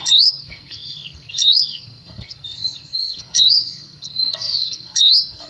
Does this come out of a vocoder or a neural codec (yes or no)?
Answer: yes